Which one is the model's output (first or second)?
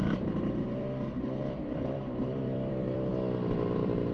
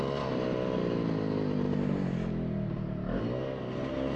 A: first